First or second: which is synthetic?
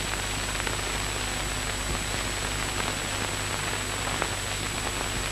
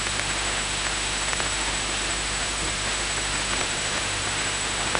second